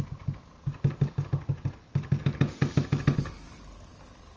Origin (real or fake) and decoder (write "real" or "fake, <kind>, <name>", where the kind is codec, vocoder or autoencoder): real